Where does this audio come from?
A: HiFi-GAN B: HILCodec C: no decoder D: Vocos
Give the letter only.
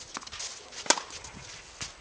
C